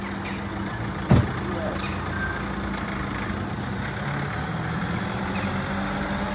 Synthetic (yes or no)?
no